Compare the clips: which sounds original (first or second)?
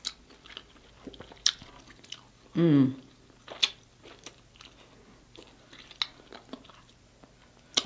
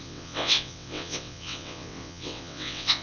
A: first